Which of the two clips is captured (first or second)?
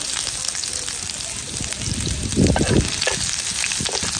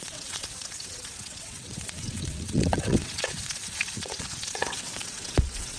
first